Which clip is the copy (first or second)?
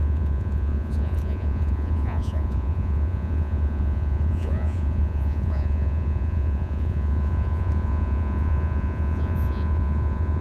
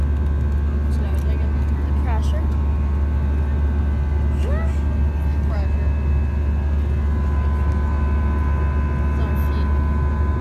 first